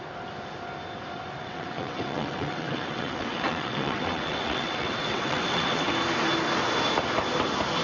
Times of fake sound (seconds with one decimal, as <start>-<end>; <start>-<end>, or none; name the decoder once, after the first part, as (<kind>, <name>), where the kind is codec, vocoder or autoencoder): 1.4-5.9 (vocoder, WaveNeXt)